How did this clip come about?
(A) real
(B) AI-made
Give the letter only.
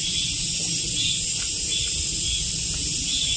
A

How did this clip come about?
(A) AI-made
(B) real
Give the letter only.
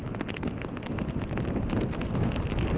B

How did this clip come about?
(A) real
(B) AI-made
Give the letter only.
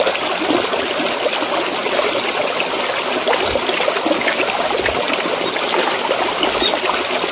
A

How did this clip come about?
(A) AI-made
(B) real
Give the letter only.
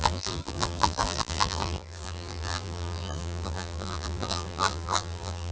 A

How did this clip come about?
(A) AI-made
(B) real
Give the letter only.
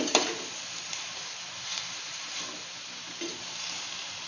A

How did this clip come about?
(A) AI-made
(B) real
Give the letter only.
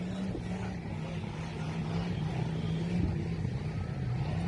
B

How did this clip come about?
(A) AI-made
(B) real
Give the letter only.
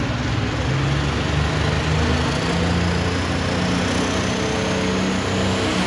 B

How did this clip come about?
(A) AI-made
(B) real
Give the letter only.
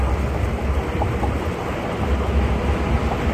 B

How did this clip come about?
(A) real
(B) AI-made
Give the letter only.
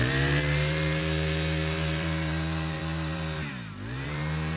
B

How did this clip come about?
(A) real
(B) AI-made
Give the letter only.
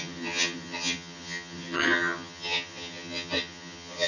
B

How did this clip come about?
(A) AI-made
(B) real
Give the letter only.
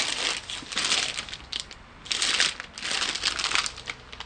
B